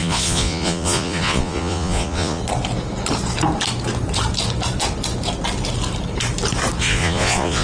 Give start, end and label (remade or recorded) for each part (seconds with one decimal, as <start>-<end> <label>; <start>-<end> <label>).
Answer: 0.0-2.4 remade; 2.4-6.8 recorded; 6.8-7.6 remade